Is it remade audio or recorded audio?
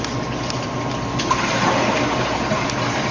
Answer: recorded